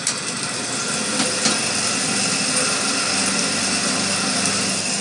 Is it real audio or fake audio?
real